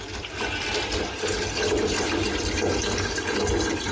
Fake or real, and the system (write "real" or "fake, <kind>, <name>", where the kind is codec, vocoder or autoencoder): real